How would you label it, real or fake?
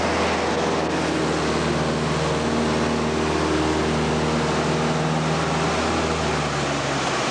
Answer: real